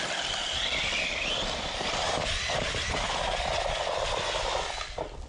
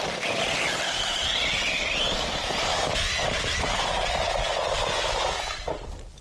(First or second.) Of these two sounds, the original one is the second